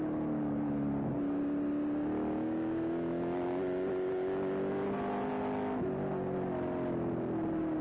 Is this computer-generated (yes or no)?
no